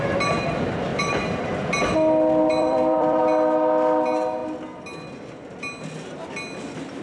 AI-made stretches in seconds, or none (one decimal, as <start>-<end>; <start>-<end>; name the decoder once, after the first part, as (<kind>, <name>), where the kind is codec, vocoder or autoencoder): 0.9-1.6 (vocoder, BigVGAN v2); 2.5-3.2